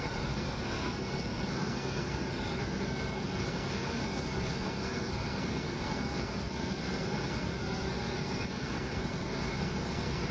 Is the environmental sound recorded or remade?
remade